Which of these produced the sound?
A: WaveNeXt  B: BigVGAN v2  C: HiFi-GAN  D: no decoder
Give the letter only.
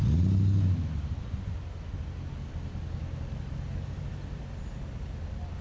D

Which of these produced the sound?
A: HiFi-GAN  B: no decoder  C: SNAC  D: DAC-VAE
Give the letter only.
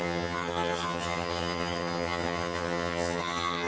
A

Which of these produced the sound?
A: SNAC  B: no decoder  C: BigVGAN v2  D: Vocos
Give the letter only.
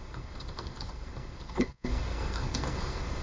A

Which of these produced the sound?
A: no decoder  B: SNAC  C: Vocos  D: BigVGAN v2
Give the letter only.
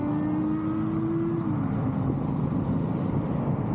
A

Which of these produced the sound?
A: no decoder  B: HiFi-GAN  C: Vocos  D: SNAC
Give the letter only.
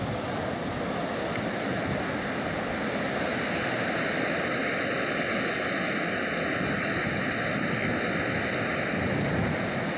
A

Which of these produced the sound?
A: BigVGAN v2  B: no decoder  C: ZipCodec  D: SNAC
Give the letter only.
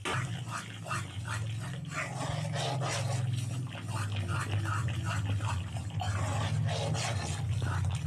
B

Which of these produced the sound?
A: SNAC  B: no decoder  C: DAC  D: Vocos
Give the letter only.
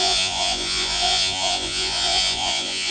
D